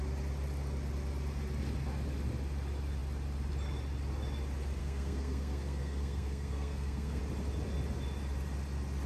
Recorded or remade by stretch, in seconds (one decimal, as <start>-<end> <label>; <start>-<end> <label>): 0.0-4.8 recorded; 4.8-7.2 remade; 7.2-9.1 recorded